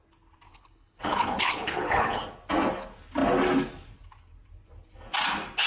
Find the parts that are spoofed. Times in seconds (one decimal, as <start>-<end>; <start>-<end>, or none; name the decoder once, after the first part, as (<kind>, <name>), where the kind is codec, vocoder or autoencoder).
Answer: 0.5-2.2 (codec, HILCodec)